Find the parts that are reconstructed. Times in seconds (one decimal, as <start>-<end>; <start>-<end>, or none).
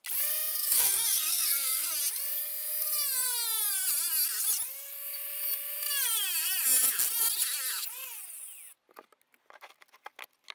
0.6-1.9